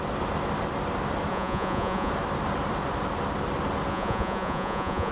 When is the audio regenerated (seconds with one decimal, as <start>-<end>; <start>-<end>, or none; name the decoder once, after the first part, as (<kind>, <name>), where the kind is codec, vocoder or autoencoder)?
1.3-2.1 (vocoder, Vocos); 3.9-5.1